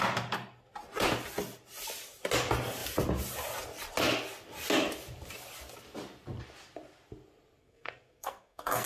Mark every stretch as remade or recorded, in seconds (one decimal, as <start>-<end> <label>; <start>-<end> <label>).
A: 0.0-7.6 recorded; 7.6-8.9 remade